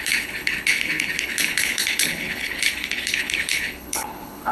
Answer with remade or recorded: remade